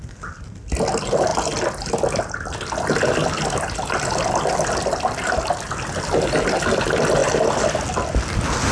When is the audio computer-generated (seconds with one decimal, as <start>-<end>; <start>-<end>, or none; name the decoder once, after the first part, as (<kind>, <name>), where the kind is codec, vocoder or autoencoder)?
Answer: none